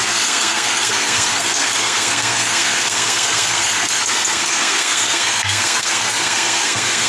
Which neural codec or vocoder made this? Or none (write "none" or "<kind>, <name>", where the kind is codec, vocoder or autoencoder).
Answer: codec, SNAC